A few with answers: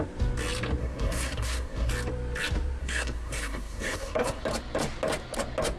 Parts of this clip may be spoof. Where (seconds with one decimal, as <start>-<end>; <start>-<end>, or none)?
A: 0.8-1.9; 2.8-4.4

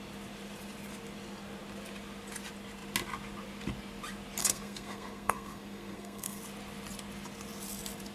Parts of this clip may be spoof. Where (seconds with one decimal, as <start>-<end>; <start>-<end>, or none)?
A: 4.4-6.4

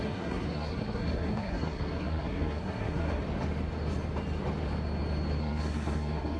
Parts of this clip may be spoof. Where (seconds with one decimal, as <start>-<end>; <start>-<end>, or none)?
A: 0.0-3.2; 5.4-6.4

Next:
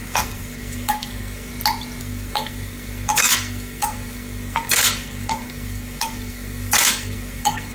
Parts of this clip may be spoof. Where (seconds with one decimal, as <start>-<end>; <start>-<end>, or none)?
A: 0.0-1.5; 2.0-7.7

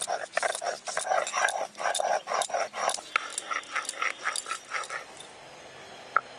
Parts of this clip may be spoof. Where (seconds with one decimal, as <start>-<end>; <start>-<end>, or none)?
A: none

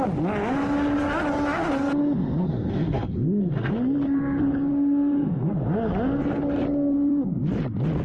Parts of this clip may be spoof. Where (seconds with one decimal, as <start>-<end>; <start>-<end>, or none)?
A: 2.0-3.7; 4.7-5.5

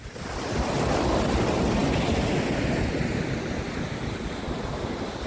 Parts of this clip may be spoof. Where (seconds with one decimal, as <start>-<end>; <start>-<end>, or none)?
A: none